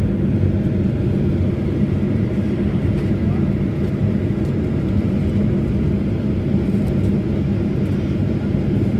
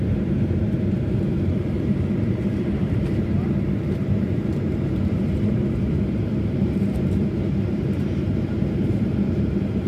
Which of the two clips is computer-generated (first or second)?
second